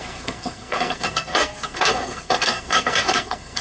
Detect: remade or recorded remade